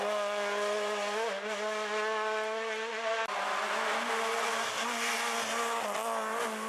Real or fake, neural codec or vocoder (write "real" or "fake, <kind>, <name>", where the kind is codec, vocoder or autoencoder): real